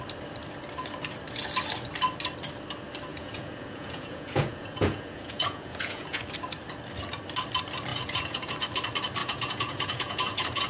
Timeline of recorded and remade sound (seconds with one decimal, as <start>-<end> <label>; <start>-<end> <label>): 0.0-3.1 recorded; 3.1-6.2 remade; 6.2-7.9 recorded; 7.9-8.5 remade; 8.5-9.2 recorded; 9.2-10.7 remade